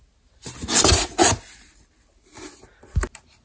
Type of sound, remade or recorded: recorded